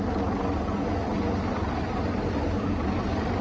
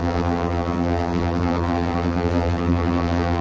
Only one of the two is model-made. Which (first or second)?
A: second